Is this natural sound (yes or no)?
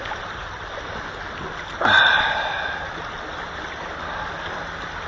yes